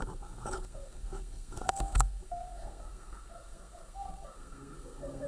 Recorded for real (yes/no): no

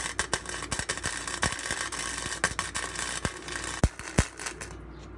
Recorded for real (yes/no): yes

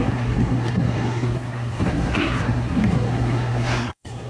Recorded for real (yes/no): no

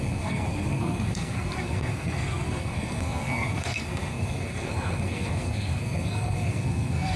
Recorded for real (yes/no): no